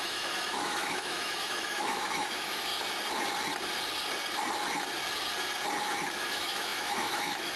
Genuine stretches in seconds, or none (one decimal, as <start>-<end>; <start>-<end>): 2.7-6.1